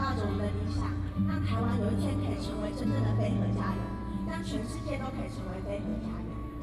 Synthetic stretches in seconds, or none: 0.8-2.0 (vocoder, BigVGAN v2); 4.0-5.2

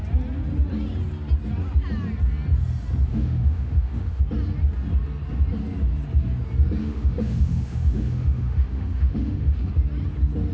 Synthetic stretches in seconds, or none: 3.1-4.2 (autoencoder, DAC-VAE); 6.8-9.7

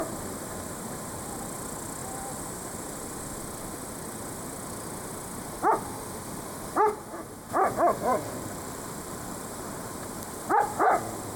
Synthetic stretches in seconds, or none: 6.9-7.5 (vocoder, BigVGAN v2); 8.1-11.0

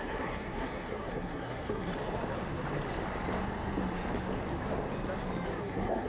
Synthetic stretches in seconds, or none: 0.0-1.9 (codec, SNAC); 5.6-6.1

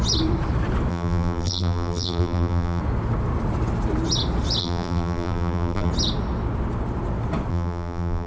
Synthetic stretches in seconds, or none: 0.9-2.8 (vocoder, BigVGAN v2); 4.6-5.9; 7.5-8.3

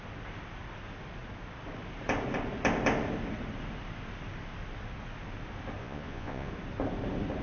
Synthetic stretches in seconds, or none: 5.8-6.5 (vocoder, Vocos)

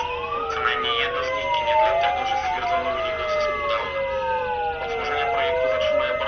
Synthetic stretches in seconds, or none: none